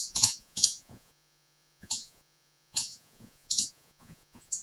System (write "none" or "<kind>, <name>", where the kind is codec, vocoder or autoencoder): vocoder, Vocos